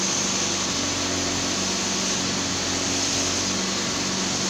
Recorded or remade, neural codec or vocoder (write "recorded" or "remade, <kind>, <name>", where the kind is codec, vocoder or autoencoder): recorded